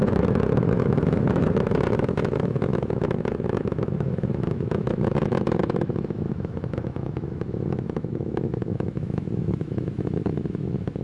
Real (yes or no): no